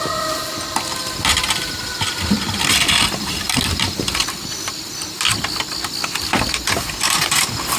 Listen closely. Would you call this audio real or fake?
real